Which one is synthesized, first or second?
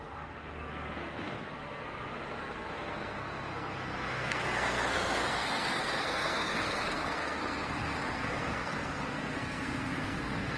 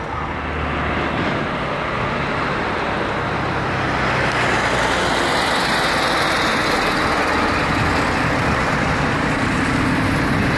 first